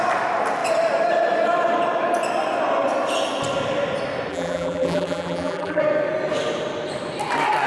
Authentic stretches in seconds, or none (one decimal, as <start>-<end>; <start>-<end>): 0.0-4.3; 5.8-7.7